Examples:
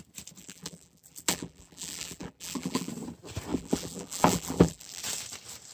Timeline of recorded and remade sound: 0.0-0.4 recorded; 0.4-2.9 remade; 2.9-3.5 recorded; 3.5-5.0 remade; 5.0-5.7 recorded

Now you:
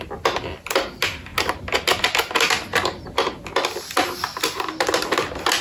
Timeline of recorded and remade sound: 0.0-5.6 recorded

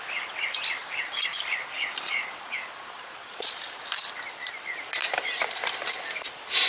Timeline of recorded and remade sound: 0.0-0.8 recorded; 0.8-3.8 remade; 3.8-6.7 recorded

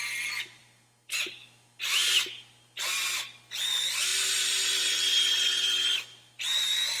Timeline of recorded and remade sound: 0.0-7.0 recorded

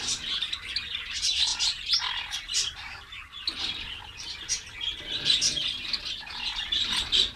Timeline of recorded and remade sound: 0.0-7.4 recorded